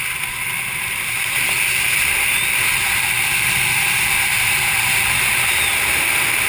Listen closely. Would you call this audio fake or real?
real